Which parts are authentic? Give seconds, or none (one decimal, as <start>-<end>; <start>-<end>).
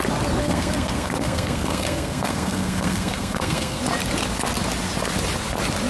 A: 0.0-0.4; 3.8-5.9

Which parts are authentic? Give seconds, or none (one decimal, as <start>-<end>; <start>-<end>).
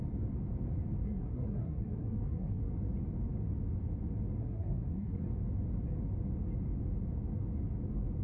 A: 0.0-1.0; 2.7-4.4; 5.2-8.2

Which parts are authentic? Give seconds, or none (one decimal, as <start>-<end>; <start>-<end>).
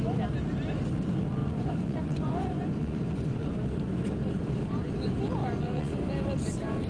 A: 0.0-1.4; 3.5-5.4; 6.1-6.9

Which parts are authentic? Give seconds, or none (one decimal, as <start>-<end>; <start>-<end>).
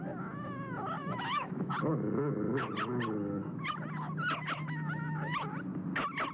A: 0.0-1.0; 1.7-6.3